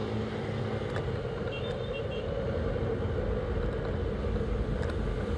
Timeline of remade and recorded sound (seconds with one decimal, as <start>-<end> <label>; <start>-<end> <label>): 0.0-5.4 recorded